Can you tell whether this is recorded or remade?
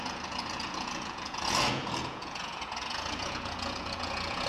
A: remade